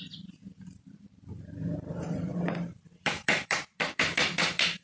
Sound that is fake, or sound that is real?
fake